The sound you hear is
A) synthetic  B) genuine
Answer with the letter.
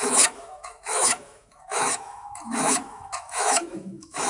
A